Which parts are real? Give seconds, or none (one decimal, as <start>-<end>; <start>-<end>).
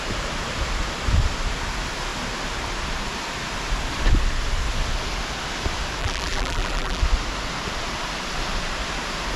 0.0-6.0; 7.0-9.4